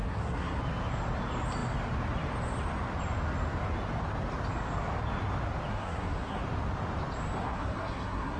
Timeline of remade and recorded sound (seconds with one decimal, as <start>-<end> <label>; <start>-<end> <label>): 0.0-0.6 remade; 0.6-5.7 recorded; 5.7-6.4 remade; 6.4-7.4 recorded; 7.4-8.4 remade